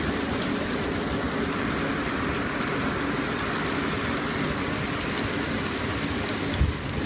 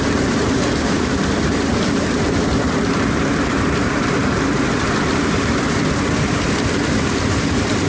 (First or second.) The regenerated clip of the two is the second